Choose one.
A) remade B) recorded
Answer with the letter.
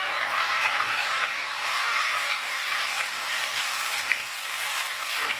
A